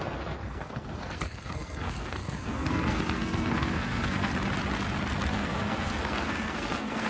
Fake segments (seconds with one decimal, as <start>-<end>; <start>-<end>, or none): 0.0-4.3; 5.3-7.1